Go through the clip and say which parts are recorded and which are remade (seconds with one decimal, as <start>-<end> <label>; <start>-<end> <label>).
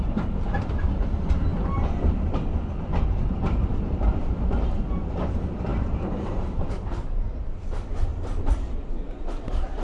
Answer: 0.0-5.7 recorded; 5.7-7.2 remade; 7.2-8.1 recorded; 8.1-8.9 remade; 8.9-9.8 recorded